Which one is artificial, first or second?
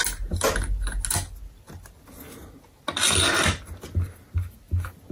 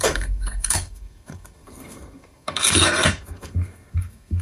second